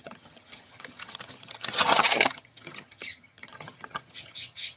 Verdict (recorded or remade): remade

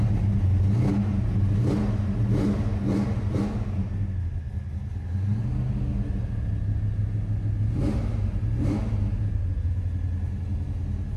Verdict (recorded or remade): recorded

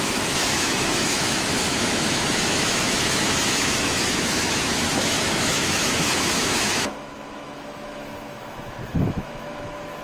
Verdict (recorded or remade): remade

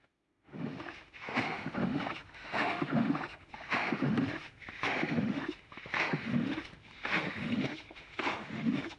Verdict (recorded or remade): remade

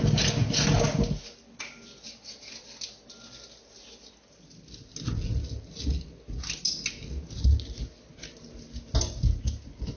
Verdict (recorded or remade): recorded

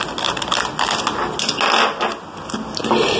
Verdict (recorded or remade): recorded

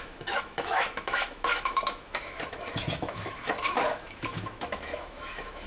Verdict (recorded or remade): remade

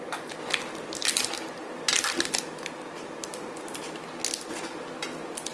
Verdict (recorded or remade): recorded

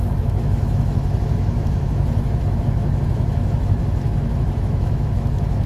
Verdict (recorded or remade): remade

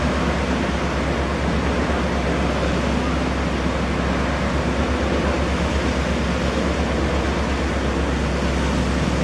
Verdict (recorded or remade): recorded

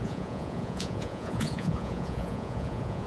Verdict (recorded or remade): remade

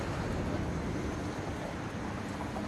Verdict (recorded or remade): recorded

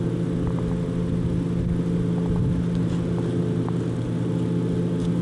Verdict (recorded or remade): recorded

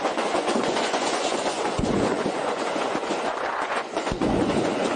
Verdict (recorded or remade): remade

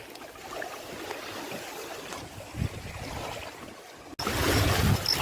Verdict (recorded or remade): recorded